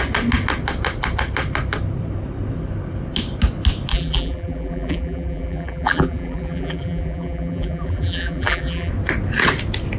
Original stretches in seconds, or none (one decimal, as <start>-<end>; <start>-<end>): 0.0-3.9; 8.9-10.0